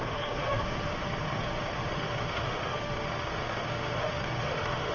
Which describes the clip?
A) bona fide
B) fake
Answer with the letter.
B